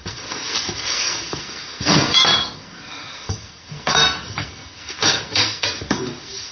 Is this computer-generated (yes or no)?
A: yes